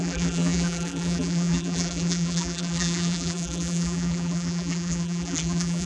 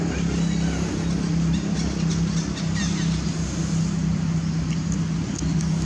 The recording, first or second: second